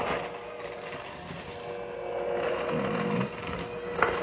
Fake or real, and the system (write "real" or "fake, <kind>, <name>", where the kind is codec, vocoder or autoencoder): real